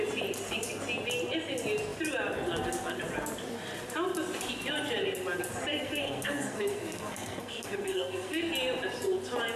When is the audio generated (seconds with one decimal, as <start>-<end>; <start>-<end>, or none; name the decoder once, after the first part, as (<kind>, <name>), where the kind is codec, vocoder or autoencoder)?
5.7-8.5 (codec, SNAC)